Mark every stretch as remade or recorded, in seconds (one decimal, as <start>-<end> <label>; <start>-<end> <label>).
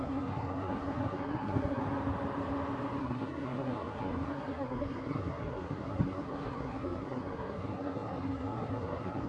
0.0-1.8 remade; 1.8-3.0 recorded; 3.0-9.3 remade